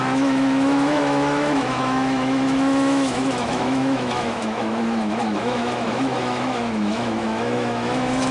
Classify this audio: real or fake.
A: fake